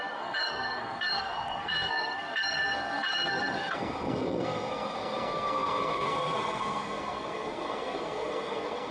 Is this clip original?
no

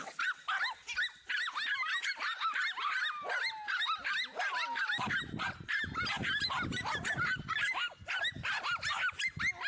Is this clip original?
yes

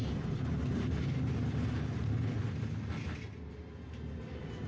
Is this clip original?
yes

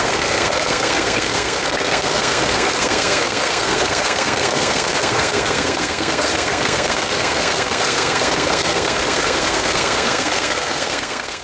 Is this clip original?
no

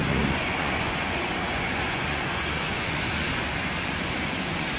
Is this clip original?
no